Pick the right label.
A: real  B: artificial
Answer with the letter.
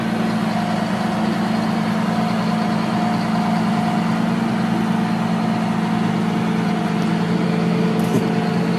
A